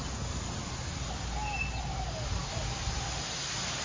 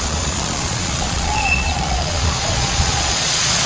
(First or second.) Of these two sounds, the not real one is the second